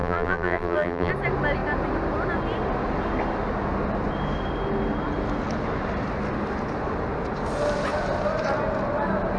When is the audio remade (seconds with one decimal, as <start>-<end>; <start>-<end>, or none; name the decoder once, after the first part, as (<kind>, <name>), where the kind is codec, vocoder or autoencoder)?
0.0-1.1 (vocoder, BigVGAN v2)